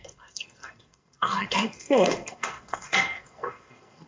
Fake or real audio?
fake